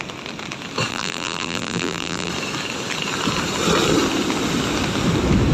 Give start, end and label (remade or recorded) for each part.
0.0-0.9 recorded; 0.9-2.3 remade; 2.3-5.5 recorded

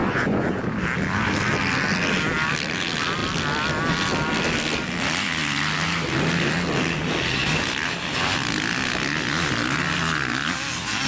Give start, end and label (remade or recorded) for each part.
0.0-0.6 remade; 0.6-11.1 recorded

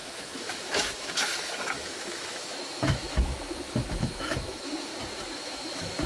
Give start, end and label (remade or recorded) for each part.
0.0-4.9 remade; 4.9-5.4 recorded; 5.4-6.1 remade